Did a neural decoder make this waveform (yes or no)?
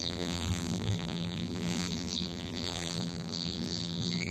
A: yes